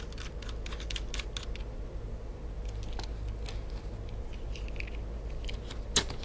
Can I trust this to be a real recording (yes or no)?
yes